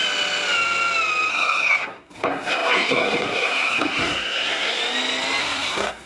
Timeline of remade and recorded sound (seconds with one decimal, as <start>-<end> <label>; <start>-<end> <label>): 0.0-1.3 recorded; 1.3-4.8 remade; 4.8-5.4 recorded; 5.4-6.1 remade